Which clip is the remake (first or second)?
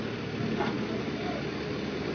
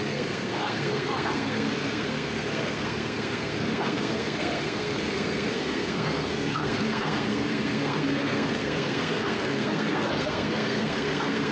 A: second